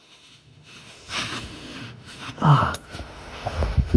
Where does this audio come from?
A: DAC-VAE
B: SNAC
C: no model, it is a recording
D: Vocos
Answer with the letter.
A